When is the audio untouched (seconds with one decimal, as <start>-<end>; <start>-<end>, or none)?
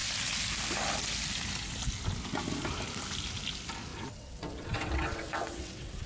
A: 0.0-3.9